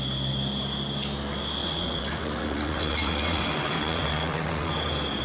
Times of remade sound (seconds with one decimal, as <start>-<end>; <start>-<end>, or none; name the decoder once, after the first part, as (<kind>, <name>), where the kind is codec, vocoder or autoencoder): 1.6-4.7 (vocoder, WaveNeXt)